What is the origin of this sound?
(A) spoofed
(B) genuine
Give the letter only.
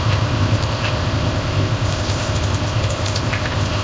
A